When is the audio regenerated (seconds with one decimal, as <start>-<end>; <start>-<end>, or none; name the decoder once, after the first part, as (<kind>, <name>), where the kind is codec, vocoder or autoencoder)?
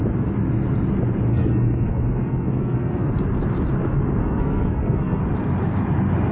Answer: 1.3-3.1 (codec, SNAC); 4.2-5.2